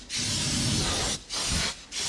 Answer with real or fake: real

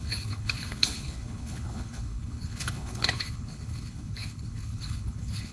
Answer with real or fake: fake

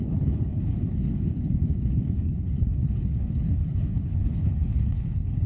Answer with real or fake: fake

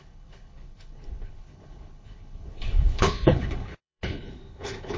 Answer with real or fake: fake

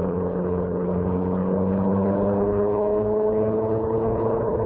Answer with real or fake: fake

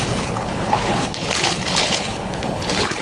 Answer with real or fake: fake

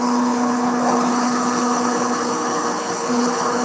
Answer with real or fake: fake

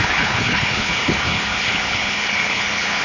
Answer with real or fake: fake